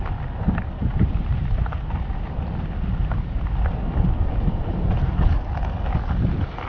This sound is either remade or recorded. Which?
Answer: recorded